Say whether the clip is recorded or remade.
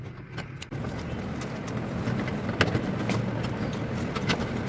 recorded